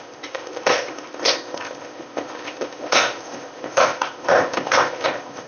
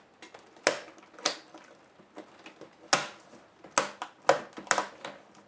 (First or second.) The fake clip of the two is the first